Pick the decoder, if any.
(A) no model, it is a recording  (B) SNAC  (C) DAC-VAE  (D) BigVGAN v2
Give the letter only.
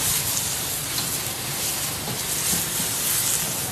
A